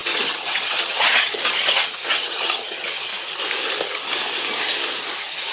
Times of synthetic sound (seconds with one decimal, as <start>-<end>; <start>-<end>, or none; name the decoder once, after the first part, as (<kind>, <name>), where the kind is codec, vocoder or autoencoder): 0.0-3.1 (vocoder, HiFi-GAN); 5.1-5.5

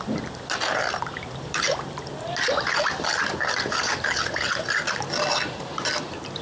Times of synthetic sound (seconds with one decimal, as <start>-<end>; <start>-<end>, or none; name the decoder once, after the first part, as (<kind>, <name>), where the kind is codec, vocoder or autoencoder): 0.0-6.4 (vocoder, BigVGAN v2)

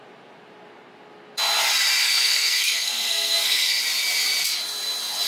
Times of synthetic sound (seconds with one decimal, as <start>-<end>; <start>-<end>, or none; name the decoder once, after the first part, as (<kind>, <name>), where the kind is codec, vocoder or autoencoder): 2.0-3.8 (codec, SNAC)